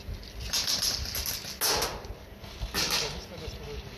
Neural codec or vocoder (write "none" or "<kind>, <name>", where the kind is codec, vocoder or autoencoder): none